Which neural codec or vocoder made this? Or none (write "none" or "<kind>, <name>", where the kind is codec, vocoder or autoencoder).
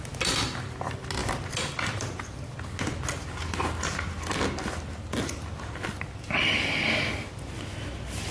none